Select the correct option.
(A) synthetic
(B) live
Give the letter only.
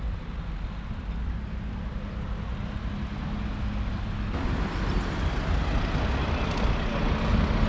B